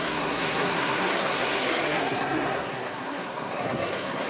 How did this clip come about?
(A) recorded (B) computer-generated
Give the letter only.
B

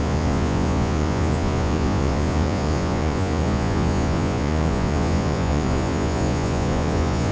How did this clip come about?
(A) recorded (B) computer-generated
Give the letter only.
B